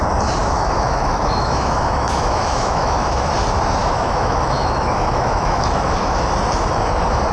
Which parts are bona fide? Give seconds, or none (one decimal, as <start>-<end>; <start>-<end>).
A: 0.0-0.4; 3.3-3.8; 6.2-7.3